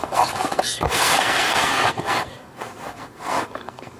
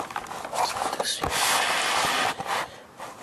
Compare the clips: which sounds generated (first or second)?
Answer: first